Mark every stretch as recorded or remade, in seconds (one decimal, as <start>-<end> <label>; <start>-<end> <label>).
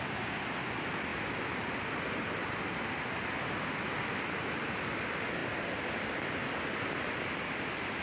0.0-8.0 recorded